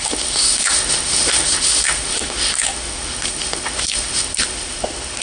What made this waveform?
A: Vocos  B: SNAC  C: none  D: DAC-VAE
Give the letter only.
D